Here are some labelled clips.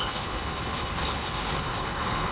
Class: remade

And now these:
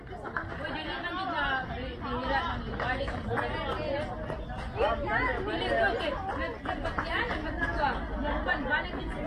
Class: recorded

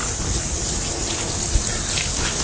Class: recorded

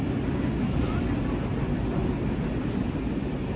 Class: recorded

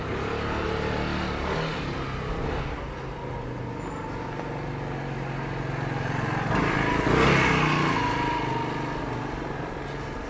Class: recorded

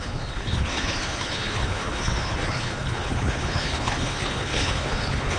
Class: remade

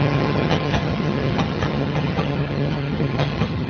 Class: remade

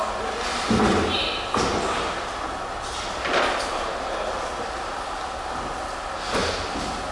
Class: recorded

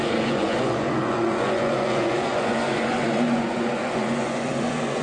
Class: remade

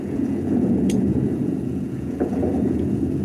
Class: remade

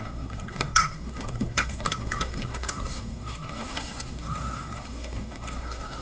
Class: remade